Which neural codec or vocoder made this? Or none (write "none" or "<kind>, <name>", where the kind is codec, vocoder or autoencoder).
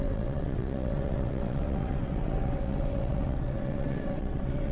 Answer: vocoder, WaveNeXt